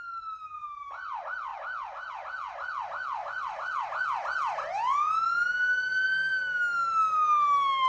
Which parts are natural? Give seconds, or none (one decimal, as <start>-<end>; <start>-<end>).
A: 0.0-0.4; 0.9-7.9